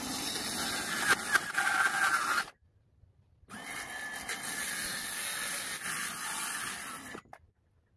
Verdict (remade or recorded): recorded